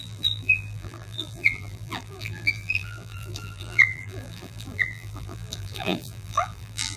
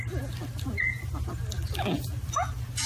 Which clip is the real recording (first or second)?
second